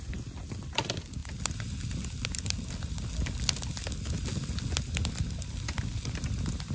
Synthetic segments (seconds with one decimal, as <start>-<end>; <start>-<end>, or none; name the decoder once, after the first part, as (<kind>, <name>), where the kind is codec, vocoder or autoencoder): none